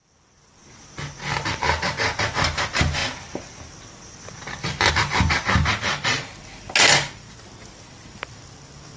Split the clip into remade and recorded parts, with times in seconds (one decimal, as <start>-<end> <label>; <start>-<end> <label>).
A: 0.0-9.0 recorded